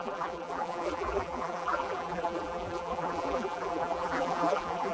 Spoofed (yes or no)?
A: yes